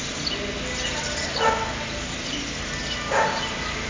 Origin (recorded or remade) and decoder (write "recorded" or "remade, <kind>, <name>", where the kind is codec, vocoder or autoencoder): recorded